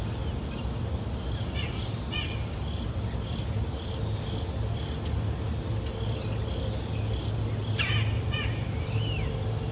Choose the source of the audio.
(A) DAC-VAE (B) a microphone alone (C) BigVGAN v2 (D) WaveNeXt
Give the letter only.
B